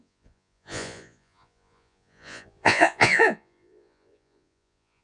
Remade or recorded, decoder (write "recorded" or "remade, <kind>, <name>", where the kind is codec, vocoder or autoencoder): remade, vocoder, Vocos